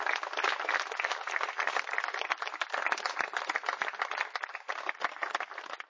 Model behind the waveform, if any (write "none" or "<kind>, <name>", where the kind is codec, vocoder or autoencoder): none